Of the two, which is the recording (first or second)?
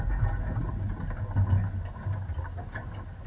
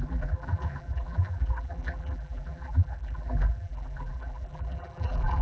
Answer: first